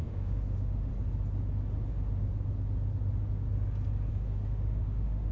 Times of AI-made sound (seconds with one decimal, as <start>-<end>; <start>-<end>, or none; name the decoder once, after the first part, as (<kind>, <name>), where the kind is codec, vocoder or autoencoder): 0.0-0.9 (autoencoder, DAC-VAE); 4.1-5.3